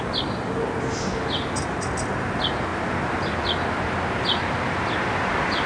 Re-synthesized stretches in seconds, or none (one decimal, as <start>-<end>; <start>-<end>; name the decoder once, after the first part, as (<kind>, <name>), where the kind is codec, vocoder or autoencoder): none

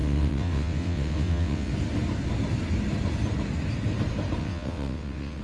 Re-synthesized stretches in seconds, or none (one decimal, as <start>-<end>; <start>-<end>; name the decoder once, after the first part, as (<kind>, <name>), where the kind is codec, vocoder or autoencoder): 0.0-1.7 (vocoder, WaveNeXt); 4.4-5.4

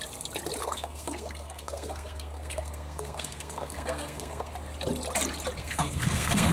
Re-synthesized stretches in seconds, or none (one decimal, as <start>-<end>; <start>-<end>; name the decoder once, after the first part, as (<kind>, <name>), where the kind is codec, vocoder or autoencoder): 0.6-4.5 (codec, SNAC); 5.6-6.5